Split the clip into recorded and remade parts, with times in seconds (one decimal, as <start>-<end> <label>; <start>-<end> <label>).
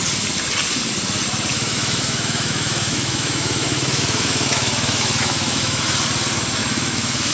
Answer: 0.0-1.5 recorded; 1.5-5.8 remade; 5.8-6.6 recorded; 6.6-7.3 remade